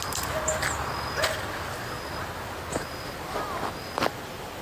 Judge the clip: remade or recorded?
recorded